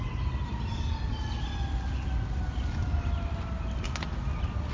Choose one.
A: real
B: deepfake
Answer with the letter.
A